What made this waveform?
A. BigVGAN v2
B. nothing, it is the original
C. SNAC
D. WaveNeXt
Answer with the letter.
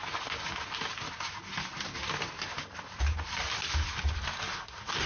B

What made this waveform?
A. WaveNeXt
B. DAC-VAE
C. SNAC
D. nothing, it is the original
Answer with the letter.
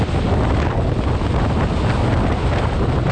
D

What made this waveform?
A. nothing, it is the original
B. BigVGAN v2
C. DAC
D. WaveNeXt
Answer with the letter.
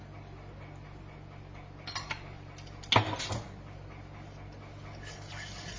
A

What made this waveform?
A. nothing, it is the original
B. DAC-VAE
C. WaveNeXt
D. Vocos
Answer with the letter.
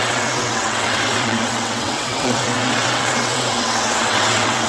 C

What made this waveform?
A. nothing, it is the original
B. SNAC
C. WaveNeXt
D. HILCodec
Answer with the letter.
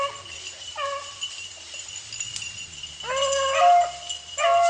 A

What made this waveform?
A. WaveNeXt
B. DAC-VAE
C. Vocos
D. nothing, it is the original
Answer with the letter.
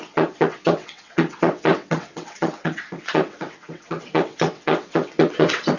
A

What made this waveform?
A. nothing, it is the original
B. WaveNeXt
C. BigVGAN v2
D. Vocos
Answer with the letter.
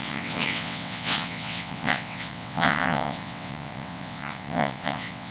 B